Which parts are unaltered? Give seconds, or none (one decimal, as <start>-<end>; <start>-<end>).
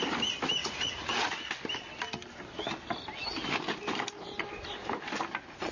0.0-0.6; 1.5-5.7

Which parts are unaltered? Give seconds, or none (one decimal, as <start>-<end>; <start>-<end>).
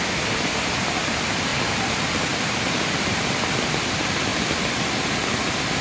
0.0-5.8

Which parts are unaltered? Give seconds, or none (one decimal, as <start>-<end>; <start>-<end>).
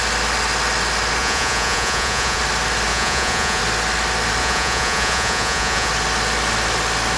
0.0-1.2; 2.4-2.9; 3.6-4.4; 5.9-7.2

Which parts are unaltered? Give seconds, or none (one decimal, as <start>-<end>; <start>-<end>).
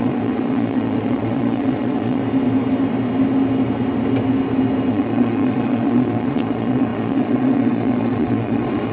2.2-4.9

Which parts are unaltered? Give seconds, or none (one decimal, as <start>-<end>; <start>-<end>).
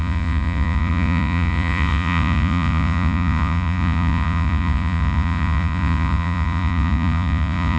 none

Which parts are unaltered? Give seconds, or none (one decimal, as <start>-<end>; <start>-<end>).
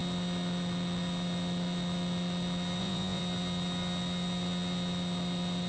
0.0-2.8; 3.2-5.7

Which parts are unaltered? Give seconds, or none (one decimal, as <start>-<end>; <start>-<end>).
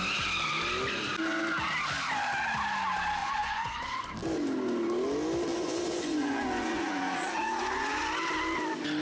0.0-3.2; 3.8-5.5; 8.0-9.0